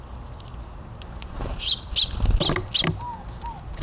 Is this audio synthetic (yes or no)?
no